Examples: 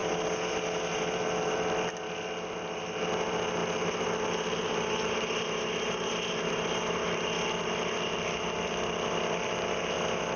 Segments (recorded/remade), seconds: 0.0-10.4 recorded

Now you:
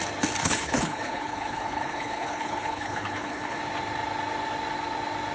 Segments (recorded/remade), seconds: 0.0-0.4 recorded; 0.4-3.6 remade; 3.6-5.3 recorded